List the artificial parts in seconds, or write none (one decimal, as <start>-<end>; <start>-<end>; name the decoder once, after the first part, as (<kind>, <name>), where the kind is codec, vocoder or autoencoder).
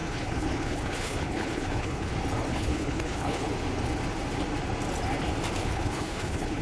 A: 0.0-2.1 (codec, HILCodec); 2.5-3.5; 5.6-6.6